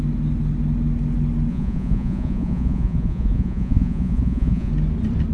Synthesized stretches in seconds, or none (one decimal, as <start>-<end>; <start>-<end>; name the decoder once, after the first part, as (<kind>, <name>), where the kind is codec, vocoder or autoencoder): 1.5-4.7 (vocoder, Vocos)